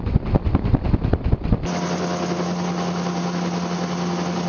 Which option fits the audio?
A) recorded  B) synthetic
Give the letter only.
A